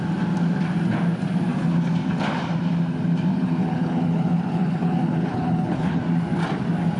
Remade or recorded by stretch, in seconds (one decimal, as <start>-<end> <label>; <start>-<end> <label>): 0.0-3.3 recorded; 3.3-6.0 remade; 6.0-7.0 recorded